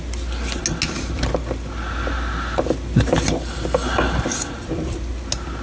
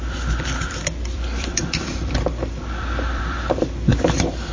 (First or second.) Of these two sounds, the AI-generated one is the second